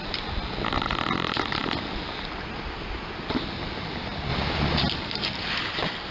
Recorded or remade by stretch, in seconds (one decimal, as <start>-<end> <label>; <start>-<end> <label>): 0.0-6.1 recorded